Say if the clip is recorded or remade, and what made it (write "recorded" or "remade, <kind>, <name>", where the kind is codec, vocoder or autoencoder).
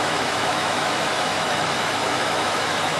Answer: remade, autoencoder, DAC-VAE